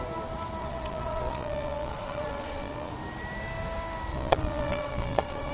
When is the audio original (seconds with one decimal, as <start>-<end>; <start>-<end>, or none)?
0.0-0.6; 2.9-4.1